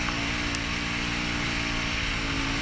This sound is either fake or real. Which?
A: real